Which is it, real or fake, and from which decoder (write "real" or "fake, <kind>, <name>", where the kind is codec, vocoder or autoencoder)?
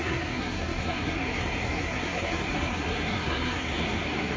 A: fake, codec, SNAC